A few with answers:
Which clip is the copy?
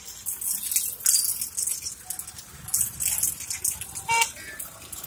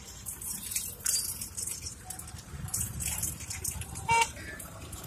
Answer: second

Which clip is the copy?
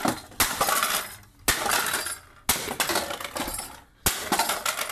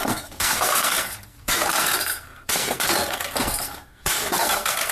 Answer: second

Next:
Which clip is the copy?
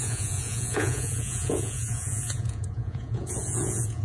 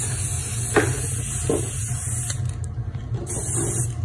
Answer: first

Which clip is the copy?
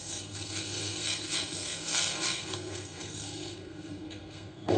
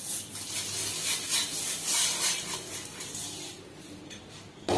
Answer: first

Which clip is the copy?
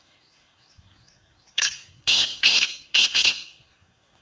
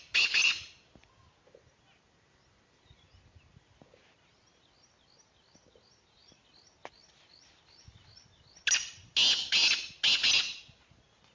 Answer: first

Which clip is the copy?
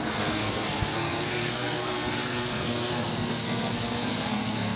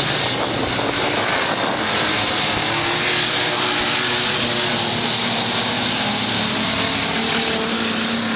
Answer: first